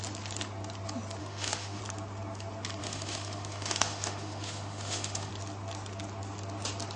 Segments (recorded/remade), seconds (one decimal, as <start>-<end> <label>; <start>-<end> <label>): 0.0-1.2 recorded; 1.2-1.8 remade; 1.8-2.8 recorded; 2.8-5.3 remade; 5.3-7.0 recorded